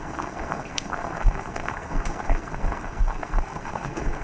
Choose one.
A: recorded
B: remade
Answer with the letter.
B